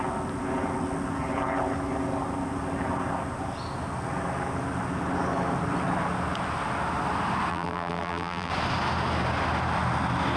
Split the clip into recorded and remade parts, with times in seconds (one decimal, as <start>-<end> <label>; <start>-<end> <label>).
0.0-7.5 recorded; 7.5-8.5 remade; 8.5-10.4 recorded